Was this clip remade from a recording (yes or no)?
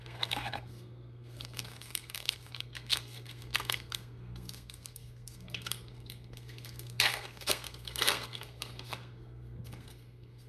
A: yes